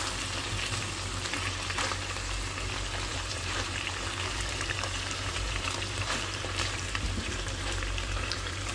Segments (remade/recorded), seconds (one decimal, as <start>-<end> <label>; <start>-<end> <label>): 0.0-3.1 recorded; 3.1-8.7 remade